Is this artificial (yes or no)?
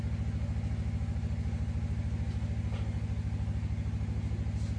no